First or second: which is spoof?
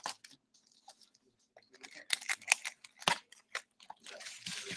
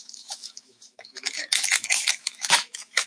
second